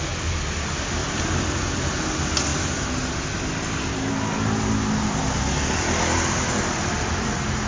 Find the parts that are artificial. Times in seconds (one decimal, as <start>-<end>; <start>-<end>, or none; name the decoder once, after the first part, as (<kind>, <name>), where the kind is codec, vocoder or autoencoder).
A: 1.0-1.7 (vocoder, BigVGAN v2)